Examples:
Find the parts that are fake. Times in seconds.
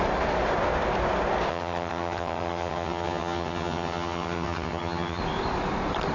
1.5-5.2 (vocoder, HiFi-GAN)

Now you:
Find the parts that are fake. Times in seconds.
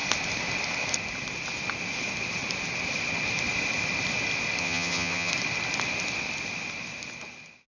4.6-5.3 (vocoder, HiFi-GAN)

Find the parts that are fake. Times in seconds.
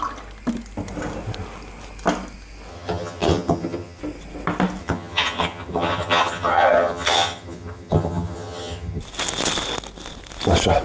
2.7-4.0 (vocoder, HiFi-GAN); 4.8-9.0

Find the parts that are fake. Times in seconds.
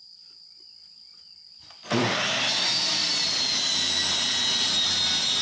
none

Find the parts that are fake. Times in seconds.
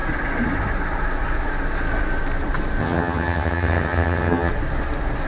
2.8-4.5 (vocoder, HiFi-GAN)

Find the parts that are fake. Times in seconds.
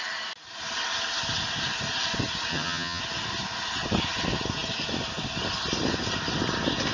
2.5-3.0 (vocoder, HiFi-GAN)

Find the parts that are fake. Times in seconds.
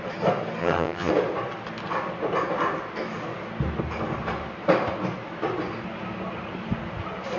0.6-1.1 (vocoder, HiFi-GAN)